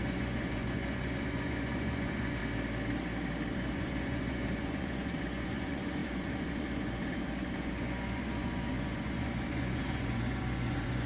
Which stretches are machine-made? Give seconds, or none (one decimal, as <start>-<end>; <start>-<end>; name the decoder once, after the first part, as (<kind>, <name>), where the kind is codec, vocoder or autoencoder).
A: 0.0-2.4 (vocoder, Vocos); 3.5-11.1